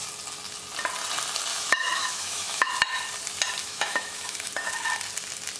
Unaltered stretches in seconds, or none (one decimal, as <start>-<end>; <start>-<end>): 0.0-1.5; 2.7-3.6; 4.5-5.6